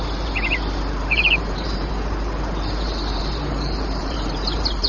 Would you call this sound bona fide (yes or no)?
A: no